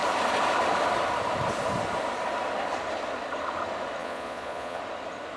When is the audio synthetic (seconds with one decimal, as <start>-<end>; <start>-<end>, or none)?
4.0-4.8